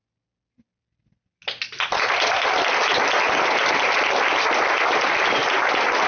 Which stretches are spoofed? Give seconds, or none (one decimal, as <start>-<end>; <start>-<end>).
none

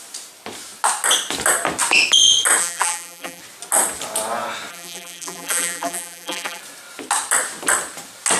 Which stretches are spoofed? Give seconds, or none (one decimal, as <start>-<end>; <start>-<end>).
2.6-3.4; 4.7-6.6

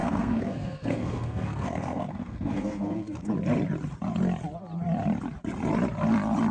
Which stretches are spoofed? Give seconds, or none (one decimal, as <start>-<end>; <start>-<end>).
0.0-3.3